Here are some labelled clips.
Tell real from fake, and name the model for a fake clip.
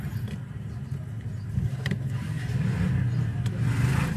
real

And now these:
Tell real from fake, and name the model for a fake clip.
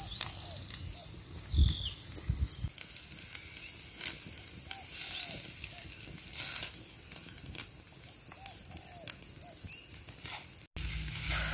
real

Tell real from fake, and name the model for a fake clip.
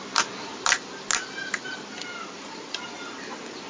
real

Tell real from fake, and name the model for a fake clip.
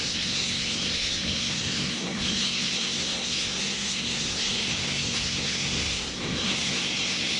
fake, codec, SNAC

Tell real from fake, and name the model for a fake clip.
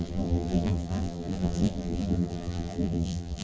fake, vocoder, BigVGAN v2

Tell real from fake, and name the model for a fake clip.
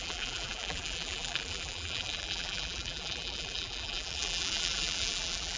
fake, vocoder, BigVGAN v2